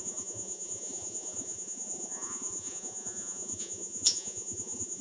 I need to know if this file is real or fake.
fake